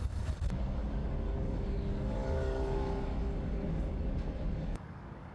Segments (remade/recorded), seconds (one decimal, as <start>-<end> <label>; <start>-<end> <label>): 0.0-5.3 remade